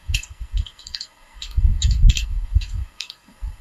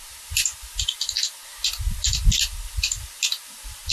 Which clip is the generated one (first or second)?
first